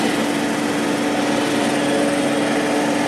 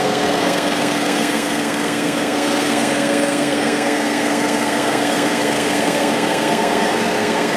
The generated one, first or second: second